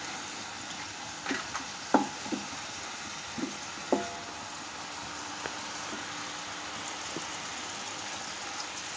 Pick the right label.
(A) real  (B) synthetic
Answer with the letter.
A